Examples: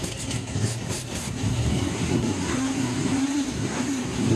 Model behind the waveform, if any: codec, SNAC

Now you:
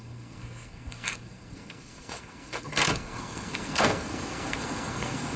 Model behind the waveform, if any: codec, SNAC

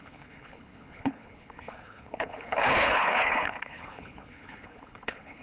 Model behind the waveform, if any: codec, HILCodec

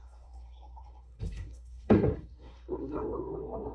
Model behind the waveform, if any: codec, SNAC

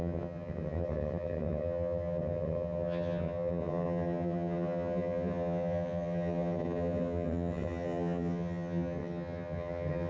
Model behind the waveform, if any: vocoder, HiFi-GAN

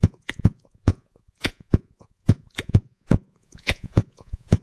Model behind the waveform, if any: vocoder, Vocos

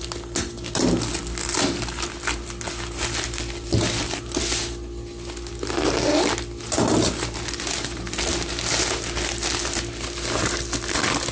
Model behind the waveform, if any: none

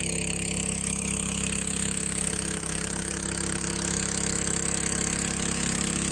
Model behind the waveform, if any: autoencoder, DAC-VAE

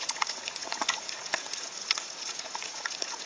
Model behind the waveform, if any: vocoder, Vocos